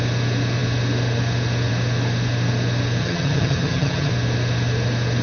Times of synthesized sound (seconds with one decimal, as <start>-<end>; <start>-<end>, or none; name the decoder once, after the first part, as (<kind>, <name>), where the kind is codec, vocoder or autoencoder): 3.0-4.1 (vocoder, HiFi-GAN)